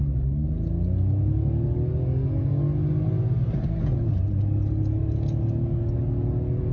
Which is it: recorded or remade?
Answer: recorded